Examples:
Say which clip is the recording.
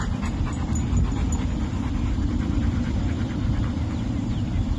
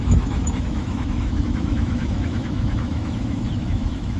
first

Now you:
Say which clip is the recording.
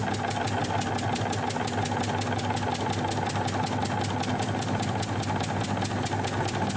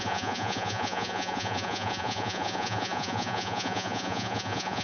first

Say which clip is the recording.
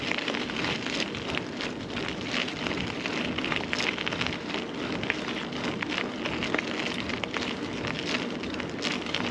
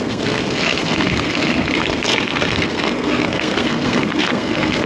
first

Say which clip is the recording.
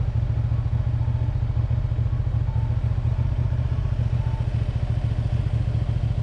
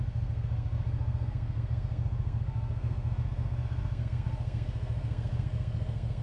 first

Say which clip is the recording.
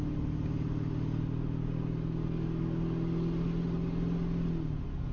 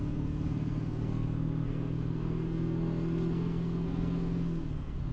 first